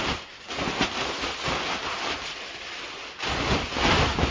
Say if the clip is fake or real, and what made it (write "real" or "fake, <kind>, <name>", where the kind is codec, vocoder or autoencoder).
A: real